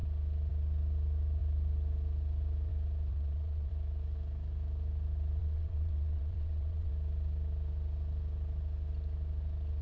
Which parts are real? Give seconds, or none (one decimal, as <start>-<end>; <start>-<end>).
0.0-3.1; 3.7-5.4; 6.9-9.8

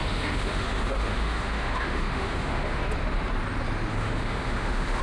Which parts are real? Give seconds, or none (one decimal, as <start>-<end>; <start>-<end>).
2.8-3.9